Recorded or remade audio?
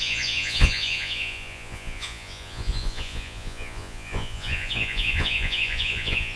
remade